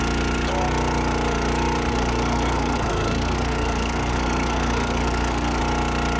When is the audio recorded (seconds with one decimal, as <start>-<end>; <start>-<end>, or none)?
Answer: 0.0-1.9; 5.6-6.2